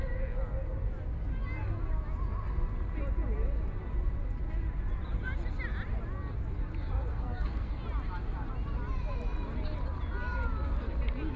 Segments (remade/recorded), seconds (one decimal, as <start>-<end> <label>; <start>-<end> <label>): 0.0-7.1 recorded; 7.1-7.8 remade; 7.8-11.4 recorded